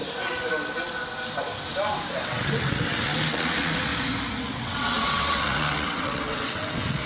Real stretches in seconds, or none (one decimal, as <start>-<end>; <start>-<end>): 0.0-2.2; 3.9-4.4